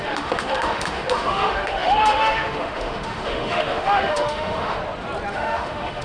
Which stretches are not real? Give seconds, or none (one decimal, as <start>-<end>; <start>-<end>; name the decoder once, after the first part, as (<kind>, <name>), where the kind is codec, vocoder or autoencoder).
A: 0.0-4.8 (autoencoder, DAC-VAE); 5.3-6.0